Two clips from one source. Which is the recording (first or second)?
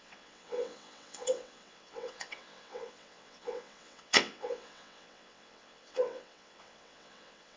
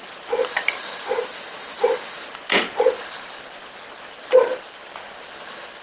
second